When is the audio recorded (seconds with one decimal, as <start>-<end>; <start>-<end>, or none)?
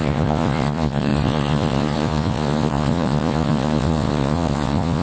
none